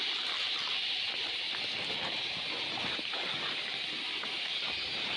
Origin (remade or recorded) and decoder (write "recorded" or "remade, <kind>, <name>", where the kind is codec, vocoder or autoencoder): recorded